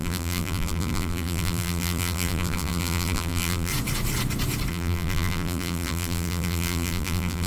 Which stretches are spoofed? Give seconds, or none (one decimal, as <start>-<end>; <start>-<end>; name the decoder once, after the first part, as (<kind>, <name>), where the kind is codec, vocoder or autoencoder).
0.0-3.7 (vocoder, BigVGAN v2); 4.7-7.5